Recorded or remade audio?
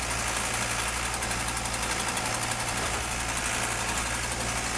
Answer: recorded